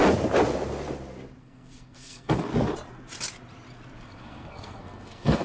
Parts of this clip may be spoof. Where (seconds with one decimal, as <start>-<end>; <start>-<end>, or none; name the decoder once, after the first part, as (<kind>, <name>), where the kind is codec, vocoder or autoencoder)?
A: 1.4-2.5 (codec, SNAC); 4.0-5.4